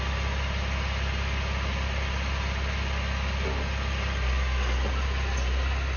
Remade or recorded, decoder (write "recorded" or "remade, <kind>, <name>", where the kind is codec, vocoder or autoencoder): recorded